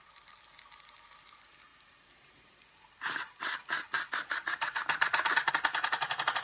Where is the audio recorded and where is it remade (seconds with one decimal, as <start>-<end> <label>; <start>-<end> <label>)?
0.0-6.4 recorded